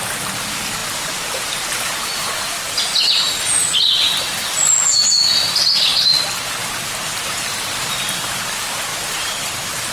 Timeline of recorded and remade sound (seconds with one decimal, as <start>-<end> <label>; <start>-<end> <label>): 0.0-8.9 recorded; 8.9-9.5 remade; 9.5-9.9 recorded